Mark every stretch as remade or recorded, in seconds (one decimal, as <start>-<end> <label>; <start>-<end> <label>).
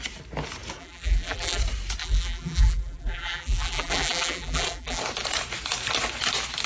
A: 0.0-0.8 recorded; 0.8-1.6 remade; 1.6-2.0 recorded; 2.0-5.0 remade; 5.0-6.7 recorded